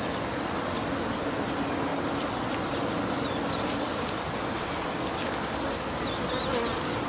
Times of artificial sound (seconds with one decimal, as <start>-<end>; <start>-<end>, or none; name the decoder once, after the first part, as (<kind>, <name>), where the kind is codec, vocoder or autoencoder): none

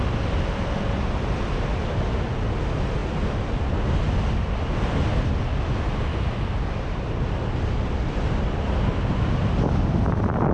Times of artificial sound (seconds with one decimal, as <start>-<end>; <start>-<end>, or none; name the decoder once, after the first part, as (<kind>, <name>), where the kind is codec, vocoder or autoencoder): none

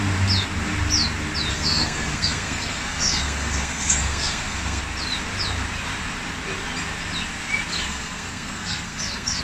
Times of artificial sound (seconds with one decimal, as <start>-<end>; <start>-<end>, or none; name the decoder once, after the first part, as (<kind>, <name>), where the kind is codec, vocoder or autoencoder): 1.5-4.8 (codec, SNAC); 7.7-9.4

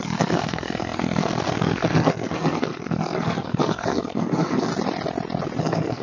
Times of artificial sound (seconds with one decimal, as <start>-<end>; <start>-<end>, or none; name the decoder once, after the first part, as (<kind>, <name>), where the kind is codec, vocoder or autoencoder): 0.0-4.7 (codec, SNAC); 5.6-6.0

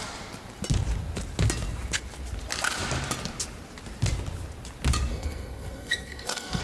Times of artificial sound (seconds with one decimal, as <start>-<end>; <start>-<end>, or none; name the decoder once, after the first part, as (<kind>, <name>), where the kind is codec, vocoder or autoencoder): 5.1-6.6 (codec, SNAC)

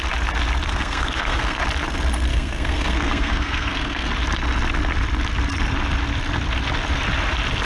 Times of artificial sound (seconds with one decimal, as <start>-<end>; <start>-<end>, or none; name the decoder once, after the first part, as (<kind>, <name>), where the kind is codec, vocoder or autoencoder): 0.7-1.6 (codec, SNAC); 2.3-4.1